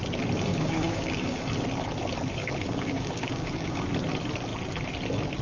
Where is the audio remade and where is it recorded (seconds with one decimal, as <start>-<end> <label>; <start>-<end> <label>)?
0.0-0.5 recorded; 0.5-1.4 remade; 1.4-2.4 recorded; 2.4-3.8 remade; 3.8-5.4 recorded